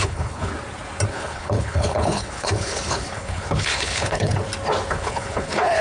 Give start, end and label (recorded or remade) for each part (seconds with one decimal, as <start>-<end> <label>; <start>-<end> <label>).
0.0-0.5 remade; 0.5-1.1 recorded; 1.1-4.4 remade; 4.4-4.9 recorded; 4.9-5.8 remade